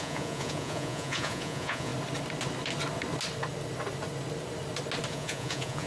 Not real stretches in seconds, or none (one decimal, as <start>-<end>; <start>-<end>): 0.0-1.9; 5.1-5.9